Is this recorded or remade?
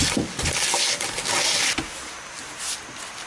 recorded